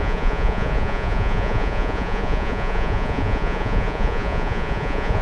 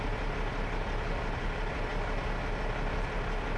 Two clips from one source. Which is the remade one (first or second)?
first